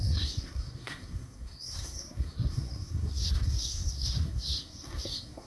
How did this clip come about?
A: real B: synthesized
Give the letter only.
B